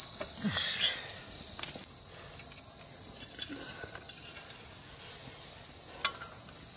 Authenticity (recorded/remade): recorded